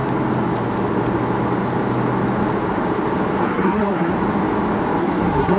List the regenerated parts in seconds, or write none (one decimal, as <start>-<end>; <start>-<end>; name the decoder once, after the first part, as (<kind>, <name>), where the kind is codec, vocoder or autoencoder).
3.4-4.1 (codec, SNAC); 5.0-5.6